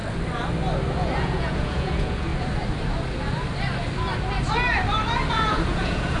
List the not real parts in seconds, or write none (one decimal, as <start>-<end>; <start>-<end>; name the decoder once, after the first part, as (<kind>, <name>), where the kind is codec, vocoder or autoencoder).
0.9-2.3 (vocoder, Vocos); 5.3-6.2